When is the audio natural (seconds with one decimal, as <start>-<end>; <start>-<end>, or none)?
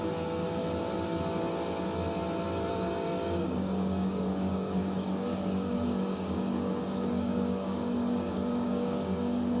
0.6-2.7